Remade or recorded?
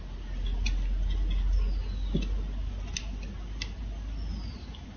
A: recorded